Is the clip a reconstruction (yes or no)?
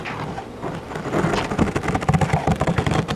no